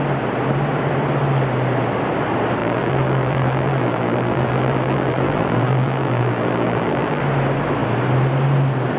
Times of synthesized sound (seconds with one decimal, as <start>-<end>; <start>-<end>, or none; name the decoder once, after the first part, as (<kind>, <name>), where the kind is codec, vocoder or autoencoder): 2.6-7.2 (vocoder, BigVGAN v2)

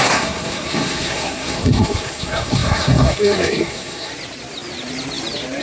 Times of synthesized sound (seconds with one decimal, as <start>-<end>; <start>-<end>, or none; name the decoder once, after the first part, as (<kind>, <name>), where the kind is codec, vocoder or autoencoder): 0.0-4.1 (codec, SNAC)